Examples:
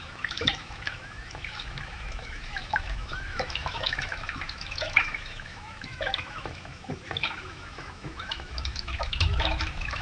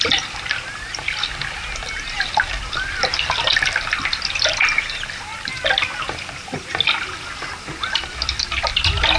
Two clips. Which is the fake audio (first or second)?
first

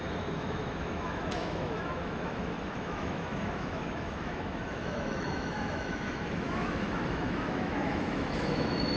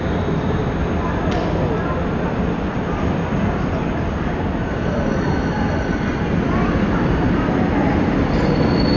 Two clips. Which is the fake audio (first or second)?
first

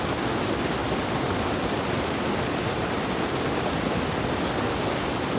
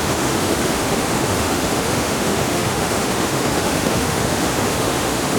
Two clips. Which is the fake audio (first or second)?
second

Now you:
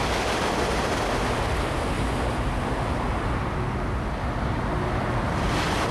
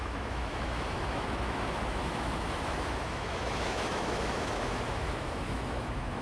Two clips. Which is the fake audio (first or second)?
second